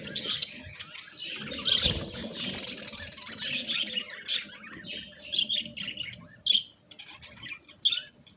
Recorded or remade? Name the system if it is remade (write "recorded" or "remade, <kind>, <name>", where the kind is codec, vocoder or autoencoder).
recorded